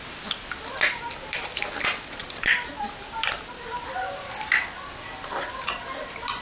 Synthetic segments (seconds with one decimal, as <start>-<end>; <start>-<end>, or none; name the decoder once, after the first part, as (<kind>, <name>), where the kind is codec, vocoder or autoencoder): none